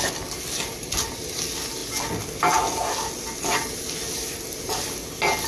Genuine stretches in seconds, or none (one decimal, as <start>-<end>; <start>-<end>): 0.0-5.5